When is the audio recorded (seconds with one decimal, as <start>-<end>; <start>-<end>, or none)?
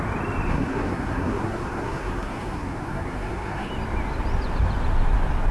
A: 0.0-0.5; 3.7-5.5